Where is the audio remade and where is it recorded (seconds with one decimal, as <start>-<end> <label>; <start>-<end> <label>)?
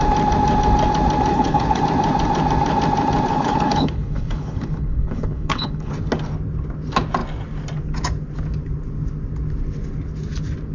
0.0-1.3 recorded; 1.3-1.8 remade; 1.8-3.3 recorded; 3.3-5.9 remade; 5.9-10.7 recorded